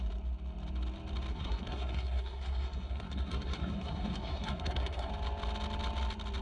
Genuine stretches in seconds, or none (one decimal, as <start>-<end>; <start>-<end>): 0.0-1.3; 5.1-6.4

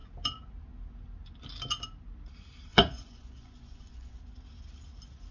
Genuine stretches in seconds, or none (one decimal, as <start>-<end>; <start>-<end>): 0.0-2.7; 4.2-5.3

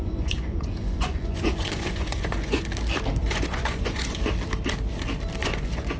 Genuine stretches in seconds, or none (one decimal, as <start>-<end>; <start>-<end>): 2.6-3.2; 4.2-5.4